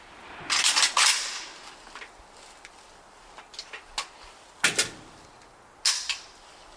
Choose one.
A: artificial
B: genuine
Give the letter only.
B